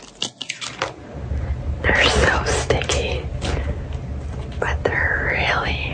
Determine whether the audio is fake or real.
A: real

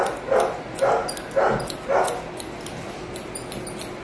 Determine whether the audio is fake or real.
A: real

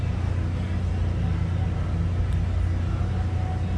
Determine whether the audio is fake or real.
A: real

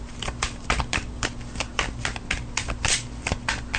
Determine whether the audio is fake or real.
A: real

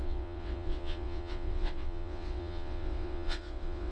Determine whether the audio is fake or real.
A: fake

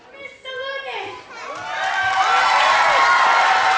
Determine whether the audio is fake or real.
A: real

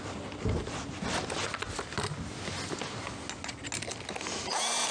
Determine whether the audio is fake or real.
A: real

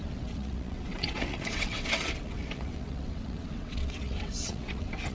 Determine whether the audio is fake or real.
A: fake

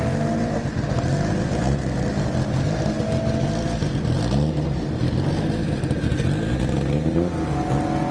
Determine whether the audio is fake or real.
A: real